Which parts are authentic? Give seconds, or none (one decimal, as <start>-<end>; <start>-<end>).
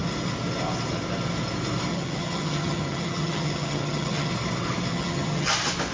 0.0-1.9; 4.3-4.9; 5.5-5.9